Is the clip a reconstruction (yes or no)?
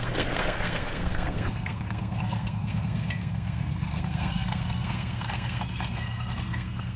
yes